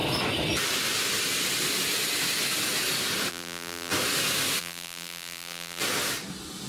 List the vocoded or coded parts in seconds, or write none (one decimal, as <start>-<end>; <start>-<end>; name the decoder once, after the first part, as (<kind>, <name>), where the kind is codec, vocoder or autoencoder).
3.3-3.9 (vocoder, BigVGAN v2); 4.6-5.8